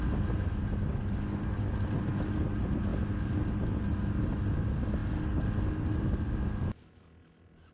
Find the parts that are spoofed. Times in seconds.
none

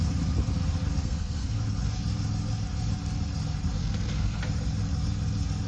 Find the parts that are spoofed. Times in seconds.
1.0-1.6 (codec, SNAC); 3.8-4.4

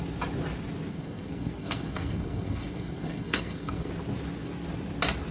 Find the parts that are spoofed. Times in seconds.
0.9-3.9 (codec, SNAC)

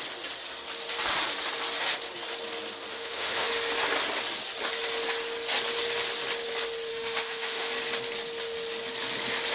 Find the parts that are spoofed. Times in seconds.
2.9-3.5 (autoencoder, DAC-VAE); 6.9-7.7

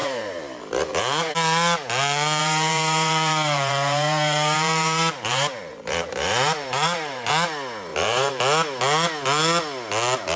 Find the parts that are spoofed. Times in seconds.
0.0-1.3 (vocoder, BigVGAN v2); 2.4-7.3; 7.9-8.4

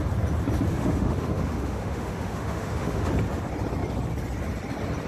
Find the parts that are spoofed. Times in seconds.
0.7-3.1 (autoencoder, DAC-VAE)

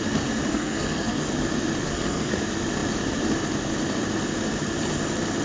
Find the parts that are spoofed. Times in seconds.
0.5-1.2 (codec, SNAC); 1.8-2.4

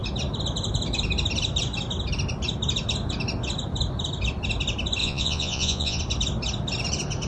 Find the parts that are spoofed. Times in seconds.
5.0-6.0 (vocoder, Vocos)